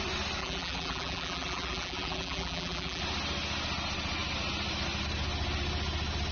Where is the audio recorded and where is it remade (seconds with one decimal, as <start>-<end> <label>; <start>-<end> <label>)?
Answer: 0.0-0.4 recorded; 0.4-3.0 remade; 3.0-6.3 recorded